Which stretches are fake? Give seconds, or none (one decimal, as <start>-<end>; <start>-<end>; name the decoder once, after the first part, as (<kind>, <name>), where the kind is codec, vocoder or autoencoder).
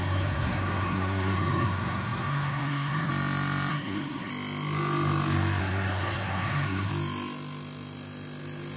0.0-3.1 (codec, SNAC); 3.7-4.3; 5.6-6.9